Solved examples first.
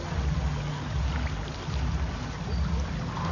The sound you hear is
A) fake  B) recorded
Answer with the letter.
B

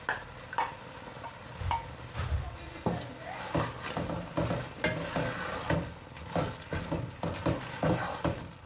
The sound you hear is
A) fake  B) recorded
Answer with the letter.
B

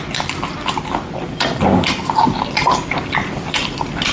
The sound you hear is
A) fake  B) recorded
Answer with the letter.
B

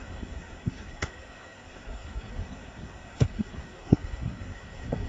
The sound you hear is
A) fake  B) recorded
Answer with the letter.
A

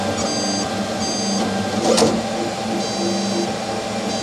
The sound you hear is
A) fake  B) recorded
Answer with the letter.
B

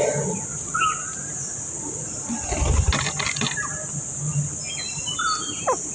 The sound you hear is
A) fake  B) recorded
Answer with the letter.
B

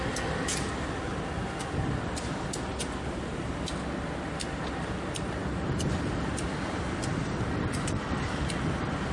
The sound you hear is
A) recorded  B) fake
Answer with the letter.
A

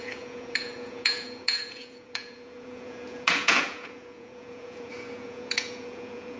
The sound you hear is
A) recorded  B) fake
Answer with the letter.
B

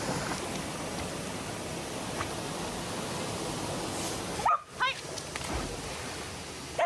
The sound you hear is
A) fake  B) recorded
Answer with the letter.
B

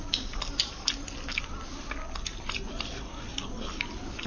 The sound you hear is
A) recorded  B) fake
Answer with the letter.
A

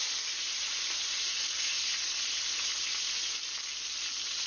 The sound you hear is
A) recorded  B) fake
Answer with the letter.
A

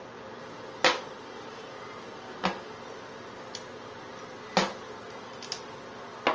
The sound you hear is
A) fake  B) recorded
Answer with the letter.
B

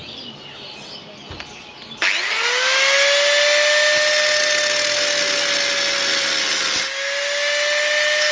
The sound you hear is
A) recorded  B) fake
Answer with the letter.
A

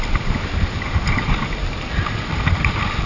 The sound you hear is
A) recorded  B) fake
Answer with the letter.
A